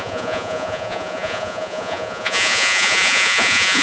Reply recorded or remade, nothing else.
remade